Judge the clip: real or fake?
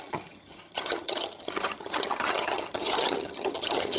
fake